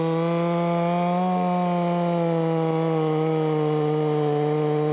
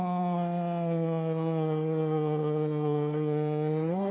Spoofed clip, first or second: second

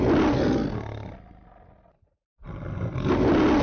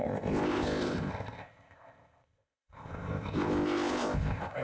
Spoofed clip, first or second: second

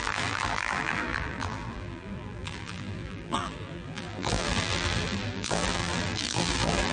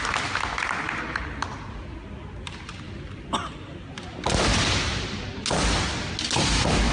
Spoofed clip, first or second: first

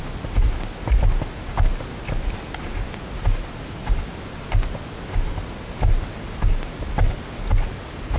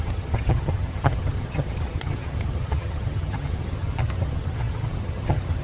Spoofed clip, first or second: second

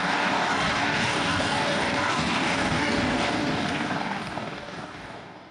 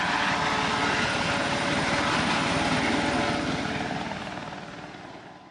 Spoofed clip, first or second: first